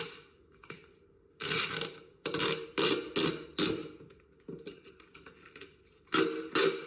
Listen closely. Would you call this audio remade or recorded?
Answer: recorded